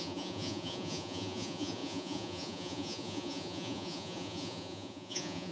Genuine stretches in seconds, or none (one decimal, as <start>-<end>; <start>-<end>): none